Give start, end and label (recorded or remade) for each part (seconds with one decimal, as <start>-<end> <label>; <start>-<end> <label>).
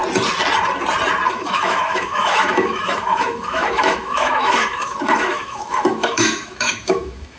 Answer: 0.0-1.3 recorded; 1.3-7.4 remade